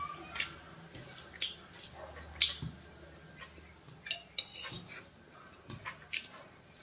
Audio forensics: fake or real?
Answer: real